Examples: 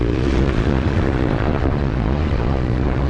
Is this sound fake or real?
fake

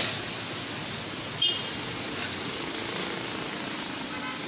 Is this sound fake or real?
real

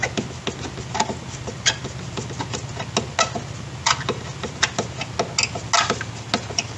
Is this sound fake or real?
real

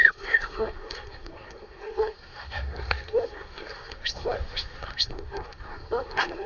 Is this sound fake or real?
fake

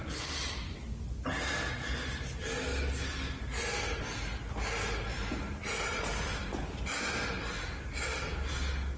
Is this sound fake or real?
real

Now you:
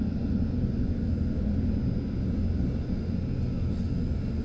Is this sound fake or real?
real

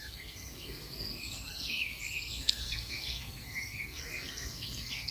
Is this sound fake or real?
fake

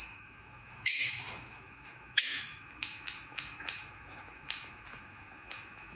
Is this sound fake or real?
fake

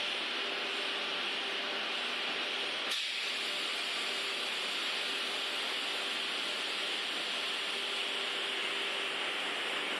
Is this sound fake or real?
real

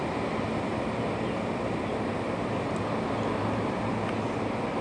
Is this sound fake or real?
real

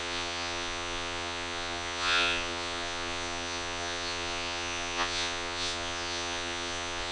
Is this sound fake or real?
fake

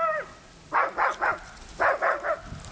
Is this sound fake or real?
real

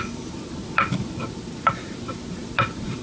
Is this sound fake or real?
real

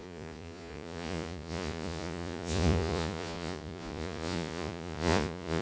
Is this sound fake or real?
fake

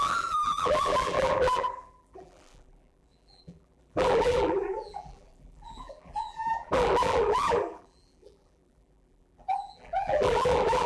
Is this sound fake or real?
fake